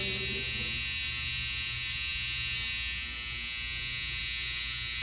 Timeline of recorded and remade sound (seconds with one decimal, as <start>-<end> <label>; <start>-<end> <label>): 0.0-5.0 recorded